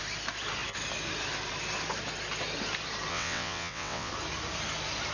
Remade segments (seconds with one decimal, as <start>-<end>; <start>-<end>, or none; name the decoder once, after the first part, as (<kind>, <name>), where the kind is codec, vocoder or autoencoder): 3.1-4.1 (vocoder, WaveNeXt)